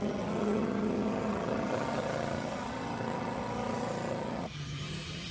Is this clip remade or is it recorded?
remade